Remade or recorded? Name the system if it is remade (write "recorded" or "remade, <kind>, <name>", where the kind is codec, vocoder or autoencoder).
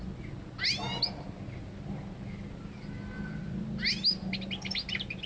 recorded